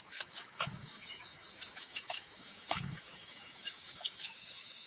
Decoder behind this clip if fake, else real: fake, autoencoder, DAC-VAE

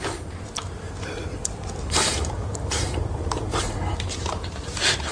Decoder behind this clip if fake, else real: fake, vocoder, BigVGAN v2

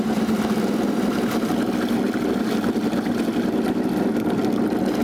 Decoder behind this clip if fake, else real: real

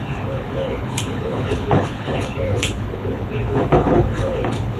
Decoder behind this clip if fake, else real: fake, codec, HILCodec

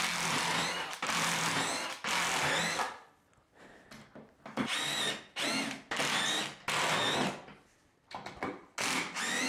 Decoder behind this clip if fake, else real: real